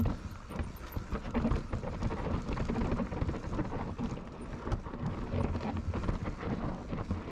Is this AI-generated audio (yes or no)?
no